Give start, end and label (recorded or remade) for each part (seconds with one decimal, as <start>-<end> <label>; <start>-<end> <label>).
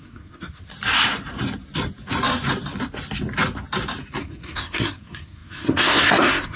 0.0-0.7 remade; 0.7-4.2 recorded; 4.2-6.6 remade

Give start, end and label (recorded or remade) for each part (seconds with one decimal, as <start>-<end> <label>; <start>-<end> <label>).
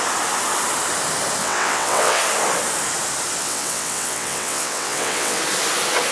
0.0-1.4 recorded; 1.4-2.2 remade; 2.2-3.4 recorded; 3.4-5.4 remade; 5.4-6.1 recorded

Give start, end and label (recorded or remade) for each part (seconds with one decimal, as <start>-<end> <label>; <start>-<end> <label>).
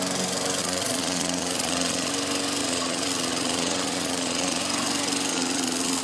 0.0-0.6 recorded; 0.6-2.1 remade; 2.1-2.6 recorded; 2.6-4.6 remade; 4.6-5.3 recorded; 5.3-6.0 remade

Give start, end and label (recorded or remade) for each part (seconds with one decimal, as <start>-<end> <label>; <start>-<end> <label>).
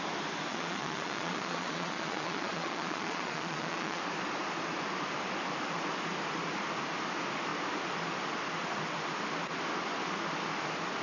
0.0-0.5 recorded; 0.5-4.0 remade; 4.0-11.0 recorded